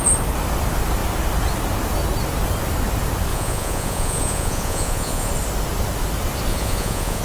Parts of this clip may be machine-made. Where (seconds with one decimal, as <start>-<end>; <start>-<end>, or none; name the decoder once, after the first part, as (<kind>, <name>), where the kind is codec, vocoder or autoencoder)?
3.3-5.3 (vocoder, Vocos); 6.5-7.2